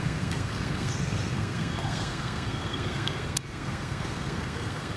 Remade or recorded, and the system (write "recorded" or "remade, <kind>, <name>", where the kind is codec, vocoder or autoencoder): remade, codec, SNAC